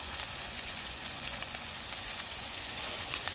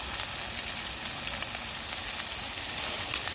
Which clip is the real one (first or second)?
second